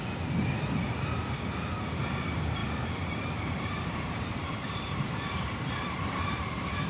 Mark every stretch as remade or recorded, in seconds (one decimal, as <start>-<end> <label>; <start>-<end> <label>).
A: 0.0-2.6 recorded; 2.6-6.9 remade